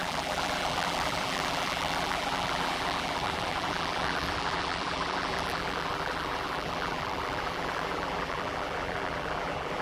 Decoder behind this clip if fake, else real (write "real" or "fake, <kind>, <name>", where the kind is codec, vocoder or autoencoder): fake, vocoder, BigVGAN v2